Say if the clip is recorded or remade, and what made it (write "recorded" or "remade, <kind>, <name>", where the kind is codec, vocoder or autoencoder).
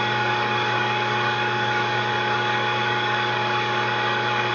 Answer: remade, codec, DAC